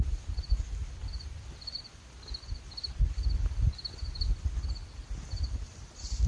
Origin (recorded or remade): recorded